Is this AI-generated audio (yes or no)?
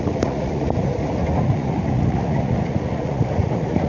yes